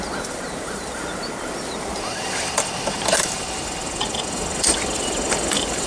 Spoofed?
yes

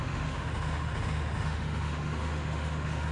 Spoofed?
yes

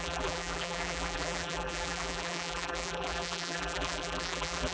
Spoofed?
yes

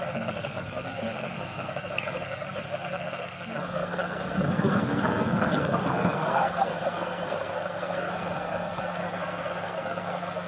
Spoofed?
yes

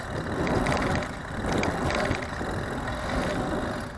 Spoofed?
no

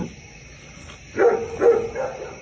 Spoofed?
no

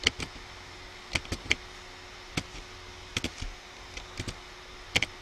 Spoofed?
no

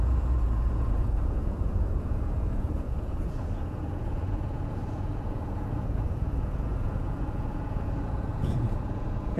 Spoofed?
yes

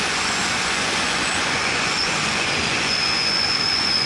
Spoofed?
yes